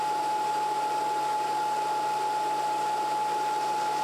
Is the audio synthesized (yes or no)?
no